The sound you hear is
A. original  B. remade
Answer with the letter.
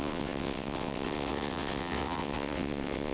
B